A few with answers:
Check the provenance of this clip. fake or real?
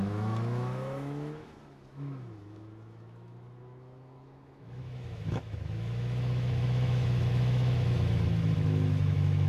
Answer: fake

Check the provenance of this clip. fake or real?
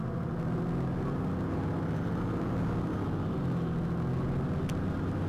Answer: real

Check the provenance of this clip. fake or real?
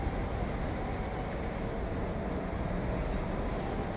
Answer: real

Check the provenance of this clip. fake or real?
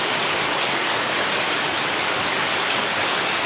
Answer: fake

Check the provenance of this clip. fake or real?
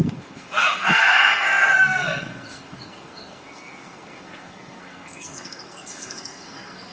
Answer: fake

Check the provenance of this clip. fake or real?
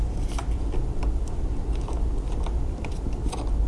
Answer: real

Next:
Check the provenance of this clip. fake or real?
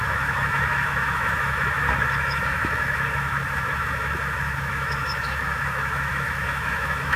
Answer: fake